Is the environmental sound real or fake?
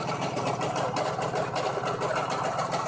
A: real